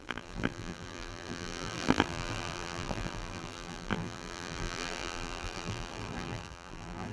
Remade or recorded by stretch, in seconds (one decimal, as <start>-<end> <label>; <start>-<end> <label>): 0.0-7.1 remade